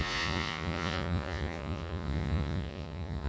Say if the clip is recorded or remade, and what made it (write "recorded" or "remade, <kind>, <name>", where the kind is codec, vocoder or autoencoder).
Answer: remade, vocoder, Vocos